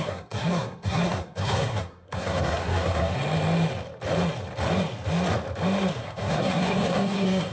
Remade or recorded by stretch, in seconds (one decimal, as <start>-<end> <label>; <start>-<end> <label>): 0.0-3.2 remade; 3.2-6.0 recorded; 6.0-7.5 remade